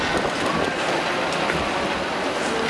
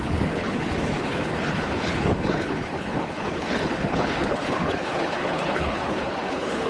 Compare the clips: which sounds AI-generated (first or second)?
second